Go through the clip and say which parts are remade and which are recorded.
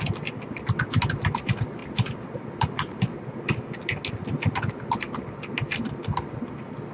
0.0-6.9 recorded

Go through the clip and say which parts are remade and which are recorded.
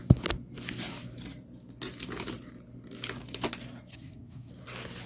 0.0-3.9 recorded; 3.9-4.5 remade; 4.5-5.1 recorded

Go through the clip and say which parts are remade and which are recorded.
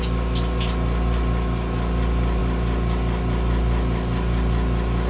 0.0-5.1 recorded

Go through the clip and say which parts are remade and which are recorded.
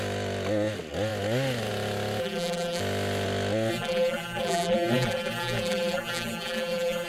0.0-2.2 recorded; 2.2-2.8 remade; 2.8-3.7 recorded; 3.7-7.1 remade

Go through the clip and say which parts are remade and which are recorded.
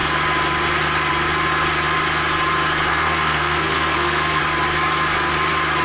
0.0-2.9 recorded; 2.9-4.4 remade; 4.4-5.8 recorded